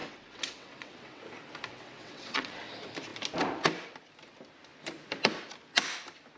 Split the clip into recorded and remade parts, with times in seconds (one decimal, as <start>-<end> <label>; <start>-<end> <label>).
0.0-1.2 remade; 1.2-1.7 recorded; 1.7-2.6 remade; 2.6-6.4 recorded